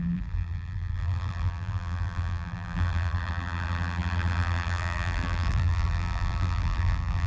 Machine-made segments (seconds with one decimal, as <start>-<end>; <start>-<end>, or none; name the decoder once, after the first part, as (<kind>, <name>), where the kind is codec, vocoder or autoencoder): 0.0-7.3 (vocoder, BigVGAN v2)